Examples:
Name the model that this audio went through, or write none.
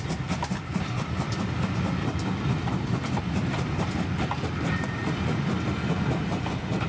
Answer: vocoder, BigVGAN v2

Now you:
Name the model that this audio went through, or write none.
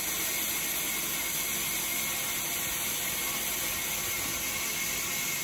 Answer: none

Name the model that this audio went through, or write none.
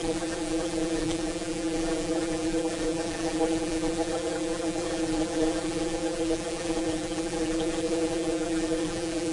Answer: vocoder, BigVGAN v2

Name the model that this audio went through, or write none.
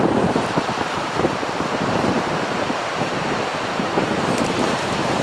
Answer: vocoder, BigVGAN v2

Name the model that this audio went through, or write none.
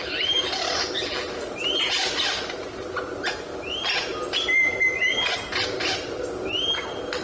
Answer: none